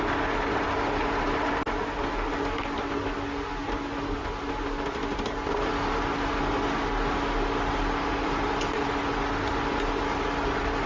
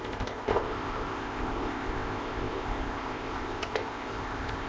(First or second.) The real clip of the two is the first